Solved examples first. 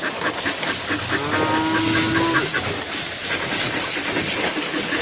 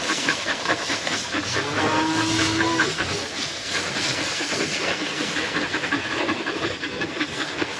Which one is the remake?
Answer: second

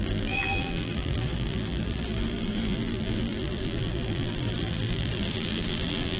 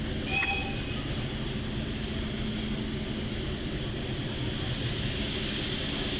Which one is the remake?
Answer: first